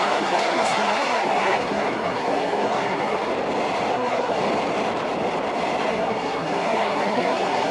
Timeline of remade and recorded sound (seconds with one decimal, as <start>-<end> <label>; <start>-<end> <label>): 0.0-3.3 remade; 3.3-3.9 recorded; 3.9-4.4 remade; 4.4-5.9 recorded; 5.9-7.7 remade

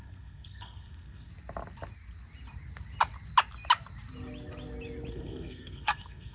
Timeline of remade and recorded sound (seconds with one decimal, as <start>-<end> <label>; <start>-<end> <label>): 0.0-1.3 remade; 1.3-5.1 recorded; 5.1-6.3 remade